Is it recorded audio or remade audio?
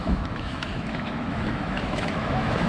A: remade